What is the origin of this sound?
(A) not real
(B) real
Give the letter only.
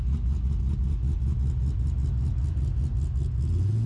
B